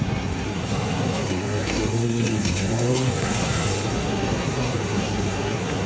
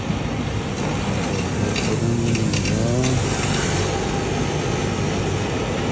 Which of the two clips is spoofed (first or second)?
first